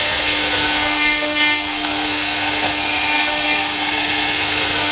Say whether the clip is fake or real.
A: fake